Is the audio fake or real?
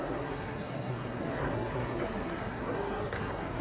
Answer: fake